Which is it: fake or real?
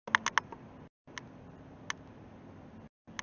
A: real